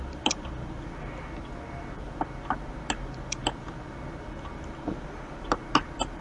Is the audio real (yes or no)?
yes